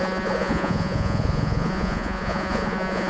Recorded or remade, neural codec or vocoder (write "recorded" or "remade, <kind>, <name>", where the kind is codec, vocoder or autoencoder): remade, vocoder, Vocos